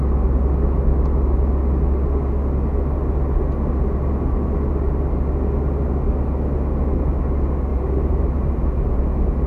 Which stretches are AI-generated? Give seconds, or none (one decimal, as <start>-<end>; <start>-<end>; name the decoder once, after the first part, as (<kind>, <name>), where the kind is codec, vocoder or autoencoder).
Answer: 7.7-9.0 (vocoder, BigVGAN v2)